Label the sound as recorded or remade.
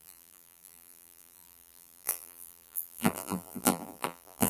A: remade